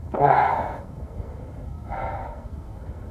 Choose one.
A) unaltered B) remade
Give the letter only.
B